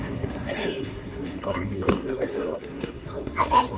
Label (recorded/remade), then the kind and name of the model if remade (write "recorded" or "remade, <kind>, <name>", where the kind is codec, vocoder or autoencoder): remade, codec, SNAC